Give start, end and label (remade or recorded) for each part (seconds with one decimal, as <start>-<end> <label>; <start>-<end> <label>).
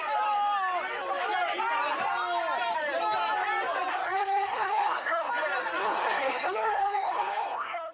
0.0-3.9 recorded; 3.9-5.3 remade; 5.3-5.8 recorded; 5.8-7.9 remade